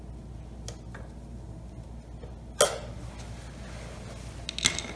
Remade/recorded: recorded